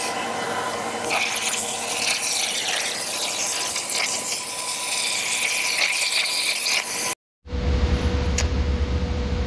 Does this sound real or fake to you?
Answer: real